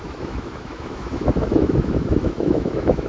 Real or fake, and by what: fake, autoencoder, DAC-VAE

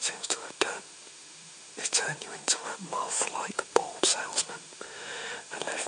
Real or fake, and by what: fake, autoencoder, DAC-VAE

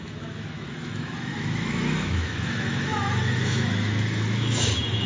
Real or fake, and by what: fake, autoencoder, DAC-VAE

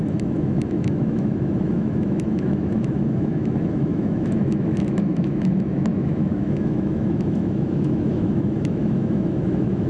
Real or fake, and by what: fake, autoencoder, DAC-VAE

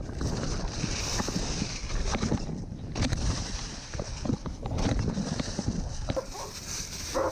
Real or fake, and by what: real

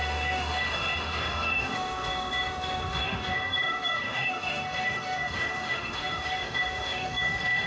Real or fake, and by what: fake, autoencoder, DAC-VAE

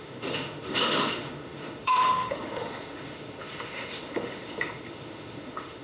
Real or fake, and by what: fake, autoencoder, DAC-VAE